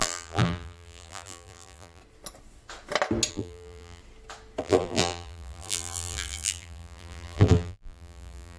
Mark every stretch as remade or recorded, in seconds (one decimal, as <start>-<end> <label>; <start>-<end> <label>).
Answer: 0.0-2.0 remade; 2.0-3.3 recorded; 3.3-4.0 remade; 4.0-4.6 recorded; 4.6-8.6 remade